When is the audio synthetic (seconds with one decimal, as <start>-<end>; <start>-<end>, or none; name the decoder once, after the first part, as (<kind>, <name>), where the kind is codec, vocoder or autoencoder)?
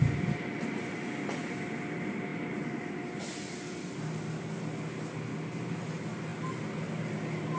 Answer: none